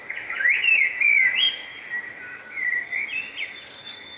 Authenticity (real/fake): real